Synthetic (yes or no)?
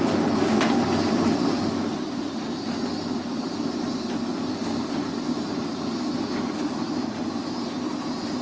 no